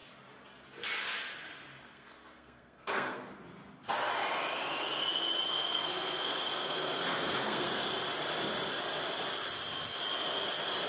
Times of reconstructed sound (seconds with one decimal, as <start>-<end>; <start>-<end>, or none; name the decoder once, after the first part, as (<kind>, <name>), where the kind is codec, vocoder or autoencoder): 1.8-3.3 (codec, SNAC); 5.5-7.8